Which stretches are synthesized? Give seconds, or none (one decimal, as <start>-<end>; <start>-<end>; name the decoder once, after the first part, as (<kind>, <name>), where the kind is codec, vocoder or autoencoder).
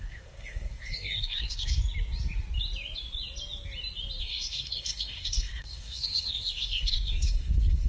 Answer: 0.0-1.8 (codec, SNAC); 4.2-7.9